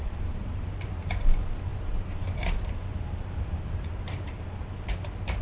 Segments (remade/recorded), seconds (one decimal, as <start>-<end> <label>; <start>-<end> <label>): 0.0-5.4 remade